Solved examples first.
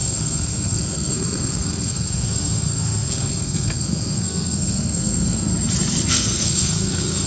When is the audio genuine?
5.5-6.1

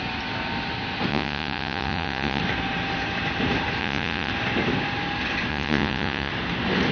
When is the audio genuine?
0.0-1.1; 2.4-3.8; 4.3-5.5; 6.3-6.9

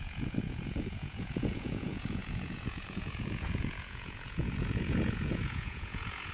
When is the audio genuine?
none